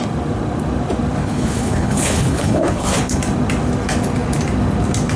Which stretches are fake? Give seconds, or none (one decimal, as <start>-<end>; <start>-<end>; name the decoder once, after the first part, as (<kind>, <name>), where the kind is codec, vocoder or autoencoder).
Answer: 1.2-3.2 (codec, HILCodec)